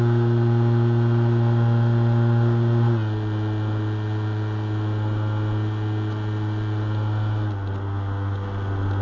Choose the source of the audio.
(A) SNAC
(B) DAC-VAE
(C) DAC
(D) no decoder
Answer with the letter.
D